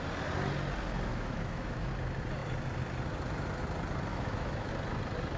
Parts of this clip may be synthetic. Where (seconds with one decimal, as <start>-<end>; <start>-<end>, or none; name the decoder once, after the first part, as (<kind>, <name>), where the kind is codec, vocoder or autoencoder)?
1.1-1.9 (autoencoder, DAC-VAE); 4.1-4.7